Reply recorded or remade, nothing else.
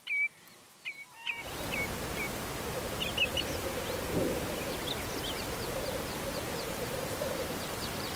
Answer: recorded